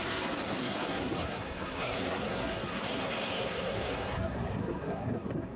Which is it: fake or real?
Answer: fake